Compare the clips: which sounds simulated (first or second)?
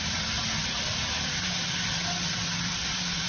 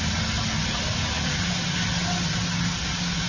first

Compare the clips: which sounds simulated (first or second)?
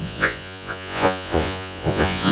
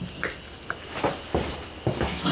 first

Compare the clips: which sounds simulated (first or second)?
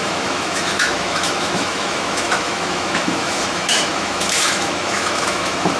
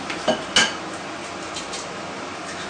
first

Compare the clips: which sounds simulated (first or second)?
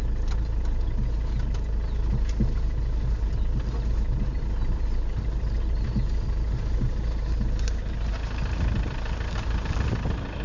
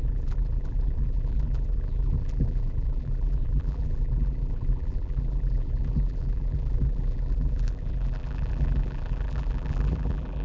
second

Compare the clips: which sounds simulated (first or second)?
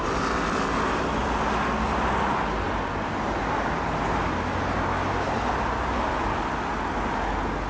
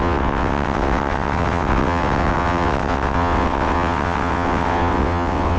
second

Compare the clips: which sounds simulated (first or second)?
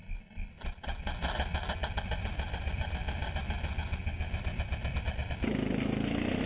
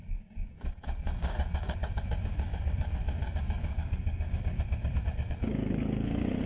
second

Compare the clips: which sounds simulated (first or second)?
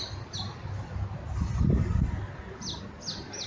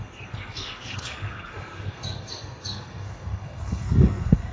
second